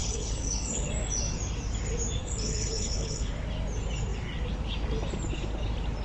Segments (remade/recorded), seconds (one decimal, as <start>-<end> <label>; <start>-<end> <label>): 0.0-0.9 remade; 0.9-2.2 recorded; 2.2-3.3 remade; 3.3-6.0 recorded